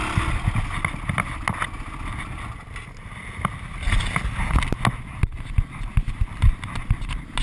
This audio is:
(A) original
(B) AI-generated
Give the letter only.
A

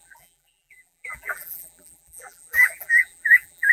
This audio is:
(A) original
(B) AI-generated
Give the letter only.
B